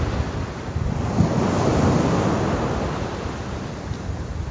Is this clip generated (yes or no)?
yes